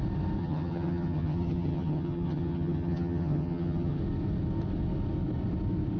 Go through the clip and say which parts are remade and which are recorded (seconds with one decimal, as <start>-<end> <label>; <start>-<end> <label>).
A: 0.0-0.4 recorded; 0.4-4.0 remade; 4.0-6.0 recorded